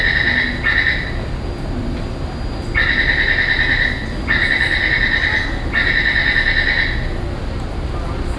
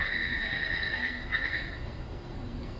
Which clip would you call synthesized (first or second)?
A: second